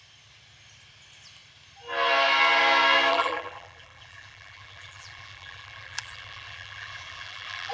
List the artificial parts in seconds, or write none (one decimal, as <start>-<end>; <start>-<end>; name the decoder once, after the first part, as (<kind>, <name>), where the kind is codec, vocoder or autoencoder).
3.1-7.7 (vocoder, BigVGAN v2)